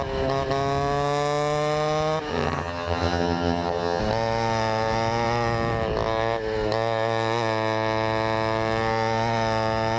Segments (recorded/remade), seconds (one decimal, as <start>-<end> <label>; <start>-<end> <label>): 0.0-2.3 recorded; 2.3-4.0 remade; 4.0-10.0 recorded